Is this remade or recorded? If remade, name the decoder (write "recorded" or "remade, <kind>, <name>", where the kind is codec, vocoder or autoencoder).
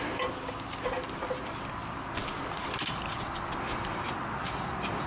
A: recorded